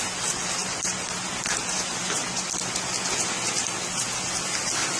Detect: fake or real real